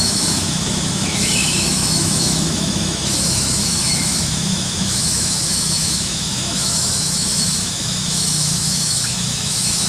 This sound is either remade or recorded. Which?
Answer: remade